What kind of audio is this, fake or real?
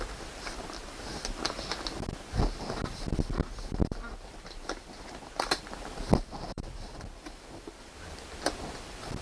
real